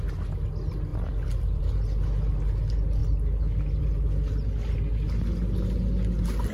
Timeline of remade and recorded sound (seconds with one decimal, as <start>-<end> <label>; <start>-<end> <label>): 0.0-6.5 recorded